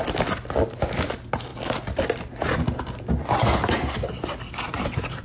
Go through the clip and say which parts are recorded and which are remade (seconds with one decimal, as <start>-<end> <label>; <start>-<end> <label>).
0.0-5.2 recorded

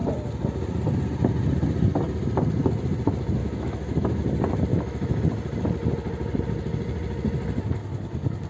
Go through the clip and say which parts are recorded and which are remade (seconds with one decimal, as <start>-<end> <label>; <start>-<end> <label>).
0.0-3.4 recorded; 3.4-4.2 remade; 4.2-4.7 recorded; 4.7-5.2 remade; 5.2-8.5 recorded

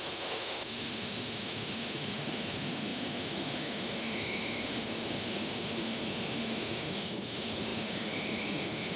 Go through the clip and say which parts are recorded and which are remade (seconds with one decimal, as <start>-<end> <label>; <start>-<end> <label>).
0.0-9.0 remade